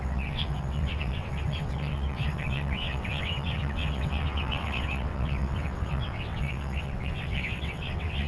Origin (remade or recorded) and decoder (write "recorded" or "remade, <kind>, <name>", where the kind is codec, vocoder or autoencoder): remade, vocoder, WaveNeXt